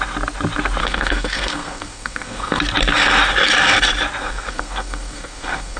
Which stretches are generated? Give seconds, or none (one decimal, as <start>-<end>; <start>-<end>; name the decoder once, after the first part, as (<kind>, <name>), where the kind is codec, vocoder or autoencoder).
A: 0.8-2.6 (codec, SNAC); 4.2-5.8